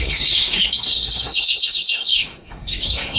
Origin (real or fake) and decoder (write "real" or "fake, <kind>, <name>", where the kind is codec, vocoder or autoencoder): fake, codec, SNAC